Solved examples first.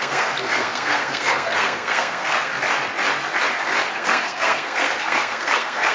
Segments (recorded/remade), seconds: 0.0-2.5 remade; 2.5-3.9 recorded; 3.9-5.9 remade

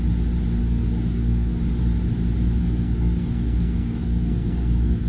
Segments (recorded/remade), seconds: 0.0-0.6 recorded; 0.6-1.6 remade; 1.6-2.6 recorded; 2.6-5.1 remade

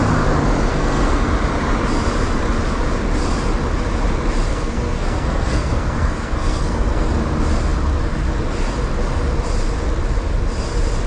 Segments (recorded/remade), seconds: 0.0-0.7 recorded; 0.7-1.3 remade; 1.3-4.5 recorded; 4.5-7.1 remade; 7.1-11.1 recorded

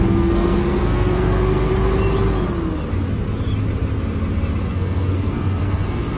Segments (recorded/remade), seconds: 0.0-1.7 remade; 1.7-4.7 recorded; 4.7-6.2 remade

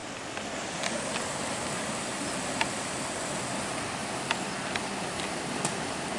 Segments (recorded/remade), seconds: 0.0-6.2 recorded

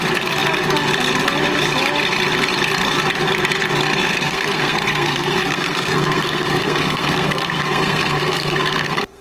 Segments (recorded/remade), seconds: 0.0-4.1 recorded; 4.1-9.2 remade

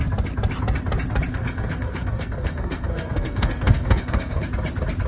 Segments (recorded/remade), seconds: 0.0-1.3 recorded; 1.3-4.4 remade; 4.4-5.1 recorded